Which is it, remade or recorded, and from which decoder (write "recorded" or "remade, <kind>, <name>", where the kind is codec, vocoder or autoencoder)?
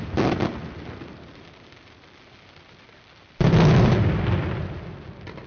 recorded